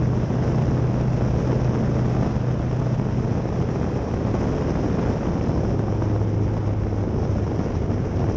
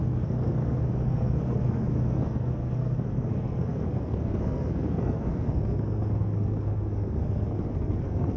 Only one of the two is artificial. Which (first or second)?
second